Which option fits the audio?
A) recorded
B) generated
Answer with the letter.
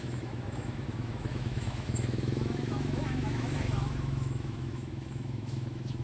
B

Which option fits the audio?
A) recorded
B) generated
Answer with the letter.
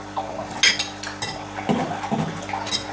A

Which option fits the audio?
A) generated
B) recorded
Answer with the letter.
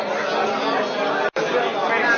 B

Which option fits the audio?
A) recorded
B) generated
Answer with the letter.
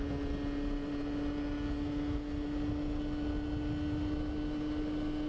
A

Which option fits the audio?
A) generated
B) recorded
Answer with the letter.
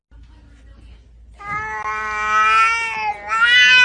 B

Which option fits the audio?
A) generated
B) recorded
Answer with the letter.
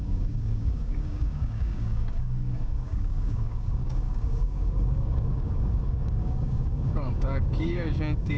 A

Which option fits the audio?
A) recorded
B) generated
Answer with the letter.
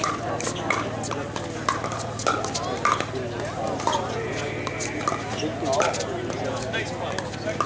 A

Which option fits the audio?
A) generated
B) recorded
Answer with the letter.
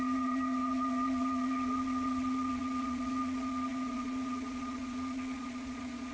A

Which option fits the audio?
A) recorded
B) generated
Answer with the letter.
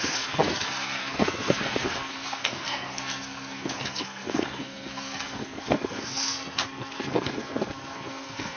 B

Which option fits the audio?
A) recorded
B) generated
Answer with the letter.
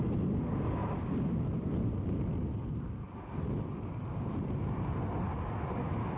A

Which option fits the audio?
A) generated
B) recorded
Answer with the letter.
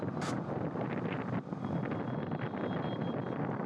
B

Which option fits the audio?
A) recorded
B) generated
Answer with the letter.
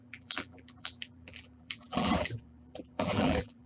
B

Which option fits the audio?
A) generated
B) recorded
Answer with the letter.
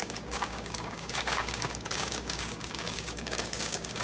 A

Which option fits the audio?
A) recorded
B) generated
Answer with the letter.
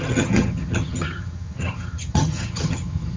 B